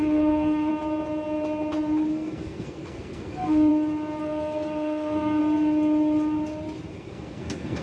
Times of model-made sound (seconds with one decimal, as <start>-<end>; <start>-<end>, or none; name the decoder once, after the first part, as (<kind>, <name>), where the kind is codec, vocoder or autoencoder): 0.0-0.7 (codec, SNAC); 2.1-3.7; 4.2-5.4; 6.9-7.8

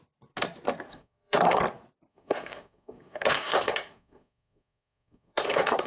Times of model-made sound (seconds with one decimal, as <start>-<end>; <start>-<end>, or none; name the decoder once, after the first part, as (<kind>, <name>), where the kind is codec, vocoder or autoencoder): 0.9-1.6 (codec, SNAC); 2.1-5.9